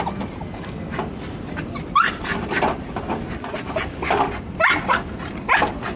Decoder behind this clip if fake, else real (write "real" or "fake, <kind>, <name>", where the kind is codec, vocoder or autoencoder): real